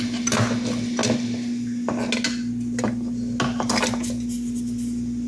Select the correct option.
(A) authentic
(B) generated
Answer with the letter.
A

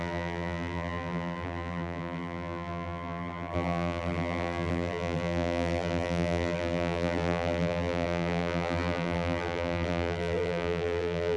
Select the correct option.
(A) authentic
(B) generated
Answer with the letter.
B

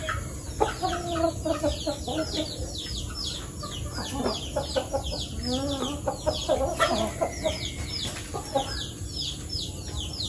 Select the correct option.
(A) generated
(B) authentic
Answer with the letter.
B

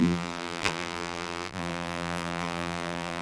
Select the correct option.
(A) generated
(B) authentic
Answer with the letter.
A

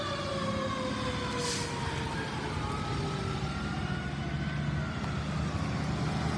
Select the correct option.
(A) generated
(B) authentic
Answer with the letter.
B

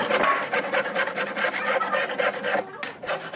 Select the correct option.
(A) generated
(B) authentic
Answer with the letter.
B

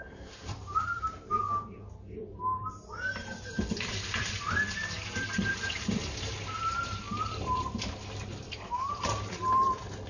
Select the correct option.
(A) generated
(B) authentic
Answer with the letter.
A